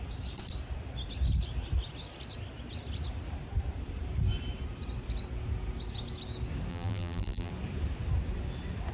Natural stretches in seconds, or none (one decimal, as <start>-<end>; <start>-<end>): 0.0-6.7; 7.5-8.9